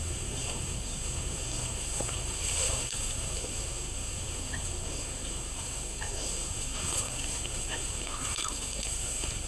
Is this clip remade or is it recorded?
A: remade